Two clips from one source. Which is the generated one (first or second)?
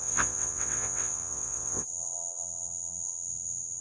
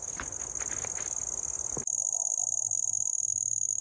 first